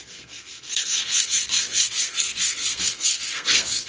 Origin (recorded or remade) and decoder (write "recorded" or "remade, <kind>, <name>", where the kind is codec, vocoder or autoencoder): remade, codec, SNAC